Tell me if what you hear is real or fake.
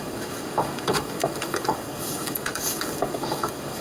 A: fake